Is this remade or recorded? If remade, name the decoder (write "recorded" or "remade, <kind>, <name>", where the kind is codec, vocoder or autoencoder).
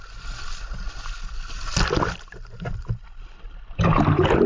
recorded